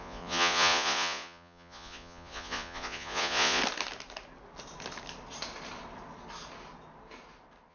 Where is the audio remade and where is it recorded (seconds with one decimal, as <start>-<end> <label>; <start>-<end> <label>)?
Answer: 0.0-3.6 remade; 3.6-7.7 recorded